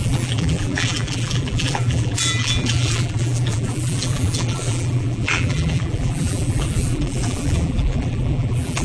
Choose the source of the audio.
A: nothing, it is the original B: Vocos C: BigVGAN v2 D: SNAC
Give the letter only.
C